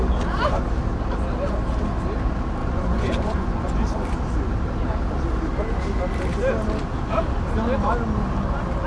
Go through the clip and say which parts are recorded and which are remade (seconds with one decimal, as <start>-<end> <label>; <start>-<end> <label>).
0.0-2.6 recorded; 2.6-3.7 remade; 3.7-8.9 recorded